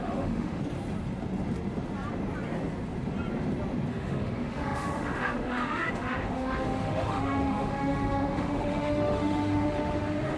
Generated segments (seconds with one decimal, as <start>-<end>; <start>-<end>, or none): 0.0-0.6; 3.9-10.4